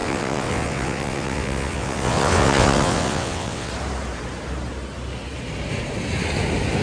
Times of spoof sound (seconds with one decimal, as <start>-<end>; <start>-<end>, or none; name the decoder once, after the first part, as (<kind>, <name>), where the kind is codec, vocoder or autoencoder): 0.0-3.7 (vocoder, WaveNeXt)